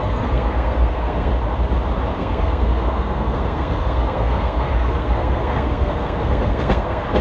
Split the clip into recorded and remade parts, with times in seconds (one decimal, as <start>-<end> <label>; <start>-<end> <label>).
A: 0.0-1.3 remade; 1.3-2.2 recorded; 2.2-7.2 remade